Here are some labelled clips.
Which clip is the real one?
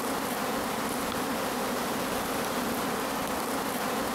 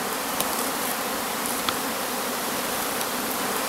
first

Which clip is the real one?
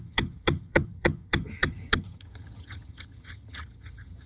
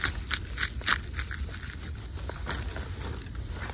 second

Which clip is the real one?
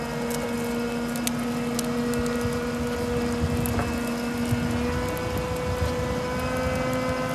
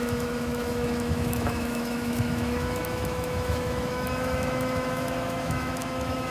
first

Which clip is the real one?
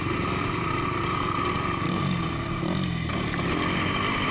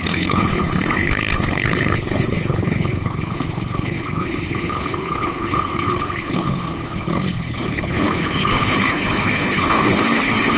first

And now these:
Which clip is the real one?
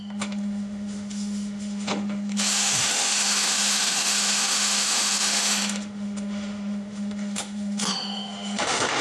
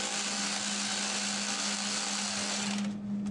second